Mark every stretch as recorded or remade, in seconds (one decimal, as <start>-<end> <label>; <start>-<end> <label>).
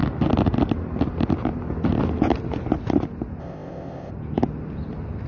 0.0-3.4 recorded; 3.4-4.1 remade; 4.1-5.3 recorded